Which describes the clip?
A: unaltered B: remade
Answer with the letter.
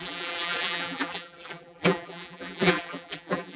B